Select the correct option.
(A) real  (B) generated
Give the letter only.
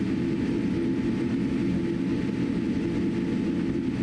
A